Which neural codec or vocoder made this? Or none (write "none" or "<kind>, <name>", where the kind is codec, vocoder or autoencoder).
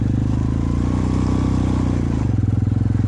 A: none